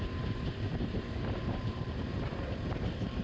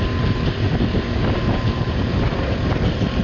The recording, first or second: second